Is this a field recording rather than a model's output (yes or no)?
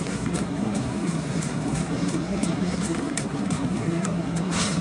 no